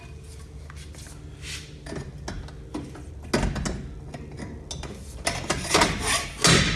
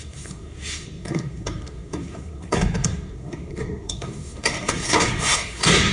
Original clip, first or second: first